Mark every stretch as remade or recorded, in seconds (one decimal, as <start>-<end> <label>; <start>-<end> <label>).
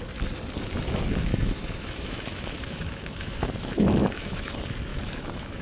0.0-1.3 recorded; 1.3-4.5 remade; 4.5-4.9 recorded; 4.9-5.6 remade